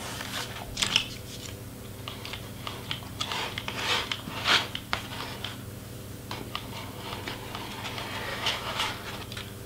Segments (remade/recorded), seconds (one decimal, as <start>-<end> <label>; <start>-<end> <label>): 0.0-8.3 recorded; 8.3-8.9 remade; 8.9-9.7 recorded